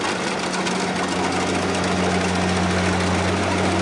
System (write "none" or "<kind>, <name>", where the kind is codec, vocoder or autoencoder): none